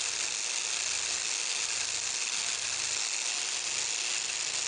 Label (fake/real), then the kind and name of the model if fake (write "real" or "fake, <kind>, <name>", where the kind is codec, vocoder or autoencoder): real